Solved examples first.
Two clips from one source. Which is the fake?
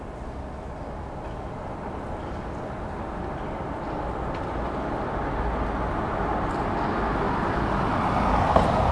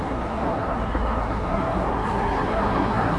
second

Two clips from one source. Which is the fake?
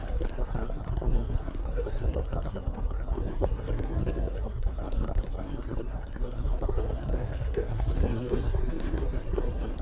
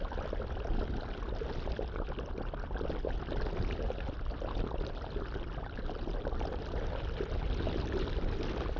first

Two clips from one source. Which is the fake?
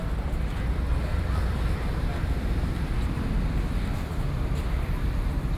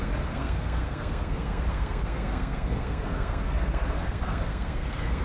second